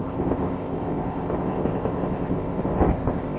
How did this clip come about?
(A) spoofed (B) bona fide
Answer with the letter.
A